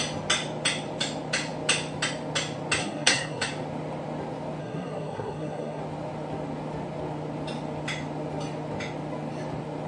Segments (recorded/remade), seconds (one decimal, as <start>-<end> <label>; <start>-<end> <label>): 0.0-2.8 recorded; 2.8-3.5 remade; 3.5-4.6 recorded; 4.6-5.8 remade; 5.8-9.9 recorded